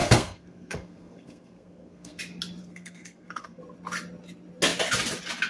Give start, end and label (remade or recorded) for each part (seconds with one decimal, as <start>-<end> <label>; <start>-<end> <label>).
0.0-2.2 remade; 2.2-2.6 recorded; 2.6-3.6 remade; 3.6-5.5 recorded